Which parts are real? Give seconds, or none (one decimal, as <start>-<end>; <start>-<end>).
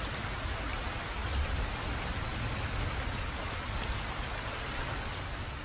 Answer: 0.0-5.6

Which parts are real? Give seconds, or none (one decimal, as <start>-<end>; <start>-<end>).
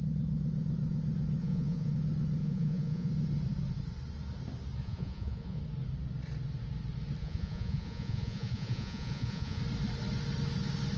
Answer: 0.0-1.4; 1.9-2.4; 3.1-4.8; 5.6-7.2; 9.6-11.0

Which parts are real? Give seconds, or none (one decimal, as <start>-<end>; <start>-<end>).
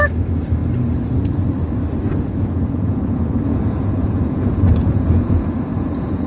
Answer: 0.0-2.3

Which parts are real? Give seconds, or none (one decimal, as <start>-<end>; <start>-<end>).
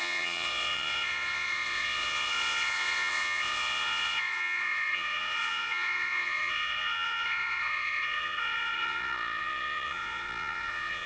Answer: none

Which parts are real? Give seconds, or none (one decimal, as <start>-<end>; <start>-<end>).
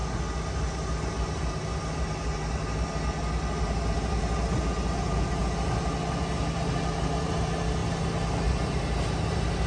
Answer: 0.0-9.7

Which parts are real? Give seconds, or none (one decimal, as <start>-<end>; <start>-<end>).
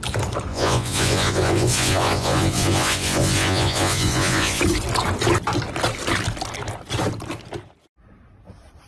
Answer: 0.0-0.5; 4.6-8.9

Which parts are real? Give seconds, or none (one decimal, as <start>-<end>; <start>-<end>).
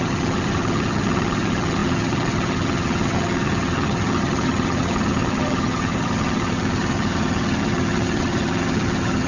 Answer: none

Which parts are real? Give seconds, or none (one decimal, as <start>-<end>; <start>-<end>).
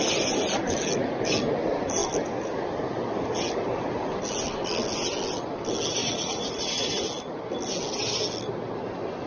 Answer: 0.0-6.0; 6.7-9.3